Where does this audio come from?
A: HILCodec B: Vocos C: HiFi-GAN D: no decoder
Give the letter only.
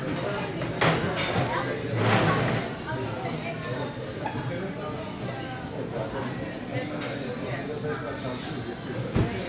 D